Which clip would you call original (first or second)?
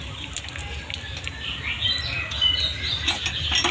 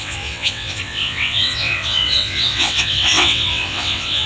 first